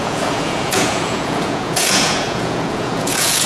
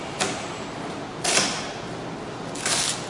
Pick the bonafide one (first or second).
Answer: second